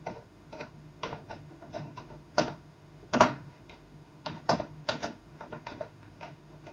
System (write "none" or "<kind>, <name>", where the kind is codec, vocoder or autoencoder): autoencoder, DAC-VAE